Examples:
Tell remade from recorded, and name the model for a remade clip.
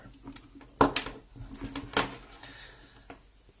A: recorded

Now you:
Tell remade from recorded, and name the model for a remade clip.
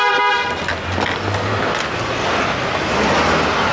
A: recorded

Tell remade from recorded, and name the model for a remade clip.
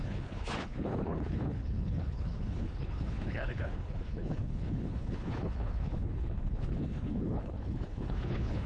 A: remade, codec, HILCodec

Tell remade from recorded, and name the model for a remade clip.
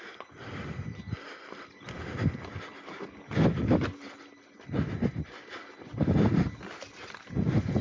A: recorded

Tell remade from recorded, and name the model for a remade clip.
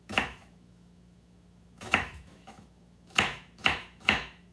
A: remade, autoencoder, DAC-VAE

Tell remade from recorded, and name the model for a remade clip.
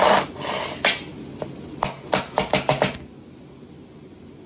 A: recorded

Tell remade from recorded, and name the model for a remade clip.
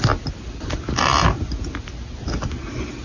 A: recorded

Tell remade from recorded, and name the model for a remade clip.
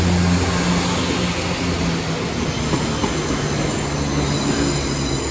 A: recorded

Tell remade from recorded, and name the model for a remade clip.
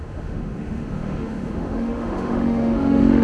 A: remade, autoencoder, DAC-VAE